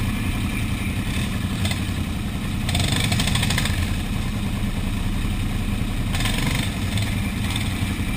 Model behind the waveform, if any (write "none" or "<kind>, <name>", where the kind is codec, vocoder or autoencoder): none